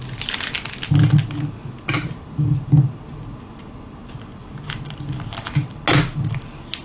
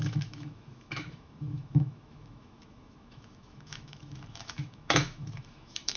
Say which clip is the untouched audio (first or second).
first